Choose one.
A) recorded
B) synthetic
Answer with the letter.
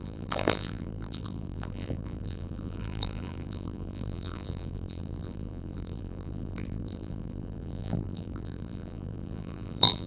B